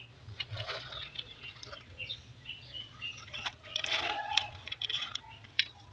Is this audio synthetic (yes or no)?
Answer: yes